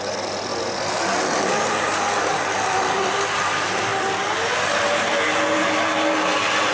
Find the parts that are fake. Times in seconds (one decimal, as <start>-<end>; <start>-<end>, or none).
none

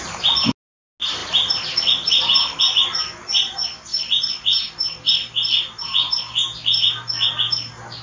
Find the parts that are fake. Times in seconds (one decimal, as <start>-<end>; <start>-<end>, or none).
none

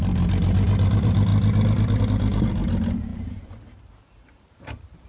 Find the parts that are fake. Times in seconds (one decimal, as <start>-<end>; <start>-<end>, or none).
0.0-1.3; 2.0-5.1